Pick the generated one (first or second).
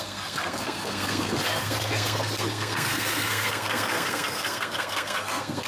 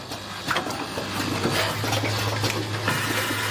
first